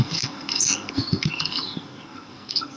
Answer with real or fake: fake